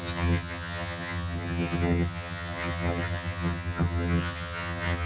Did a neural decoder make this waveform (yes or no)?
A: yes